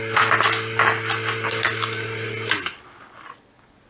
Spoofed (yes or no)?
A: no